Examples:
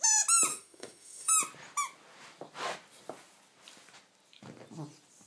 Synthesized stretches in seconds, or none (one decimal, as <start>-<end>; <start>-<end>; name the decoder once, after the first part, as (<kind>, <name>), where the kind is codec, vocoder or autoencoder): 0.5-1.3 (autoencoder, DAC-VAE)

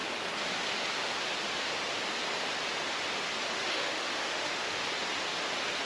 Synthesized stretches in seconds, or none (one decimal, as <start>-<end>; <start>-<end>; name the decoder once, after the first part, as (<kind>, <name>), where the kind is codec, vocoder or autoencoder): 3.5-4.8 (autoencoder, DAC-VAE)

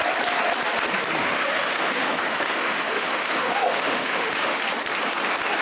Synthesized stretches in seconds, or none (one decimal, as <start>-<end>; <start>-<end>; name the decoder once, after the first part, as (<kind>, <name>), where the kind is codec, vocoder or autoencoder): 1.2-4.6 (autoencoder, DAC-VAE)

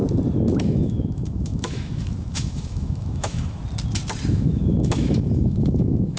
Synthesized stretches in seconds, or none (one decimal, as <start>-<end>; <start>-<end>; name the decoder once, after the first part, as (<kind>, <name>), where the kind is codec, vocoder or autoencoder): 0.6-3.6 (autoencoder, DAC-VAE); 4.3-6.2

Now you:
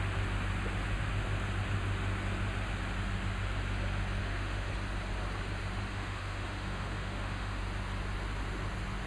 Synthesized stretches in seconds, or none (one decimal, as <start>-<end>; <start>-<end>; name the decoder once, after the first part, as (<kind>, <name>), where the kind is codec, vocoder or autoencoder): 4.2-4.7 (autoencoder, DAC-VAE); 5.9-7.6

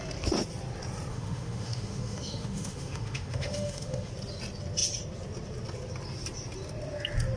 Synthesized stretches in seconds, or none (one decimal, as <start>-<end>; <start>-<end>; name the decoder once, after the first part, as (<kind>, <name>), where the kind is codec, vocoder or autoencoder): 1.1-4.1 (autoencoder, DAC-VAE)

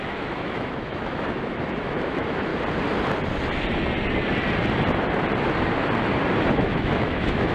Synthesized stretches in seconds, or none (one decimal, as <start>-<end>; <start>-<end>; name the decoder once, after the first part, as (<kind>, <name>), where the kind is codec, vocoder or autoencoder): 0.0-2.5 (autoencoder, DAC-VAE); 6.5-7.5

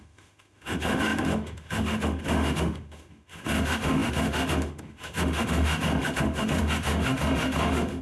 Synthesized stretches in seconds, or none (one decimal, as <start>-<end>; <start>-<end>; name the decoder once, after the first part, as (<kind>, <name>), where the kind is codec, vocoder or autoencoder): 0.0-8.0 (autoencoder, DAC-VAE)